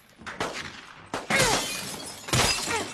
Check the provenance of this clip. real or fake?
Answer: real